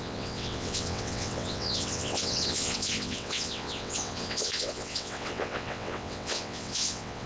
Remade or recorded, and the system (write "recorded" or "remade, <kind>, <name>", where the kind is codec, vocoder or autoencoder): remade, vocoder, WaveNeXt